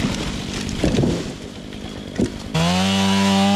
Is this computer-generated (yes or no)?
no